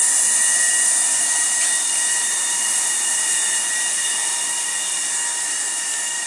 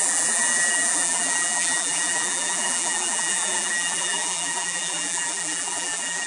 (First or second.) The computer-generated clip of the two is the second